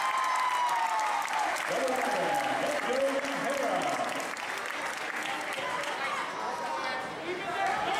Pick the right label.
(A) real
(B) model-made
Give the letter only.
A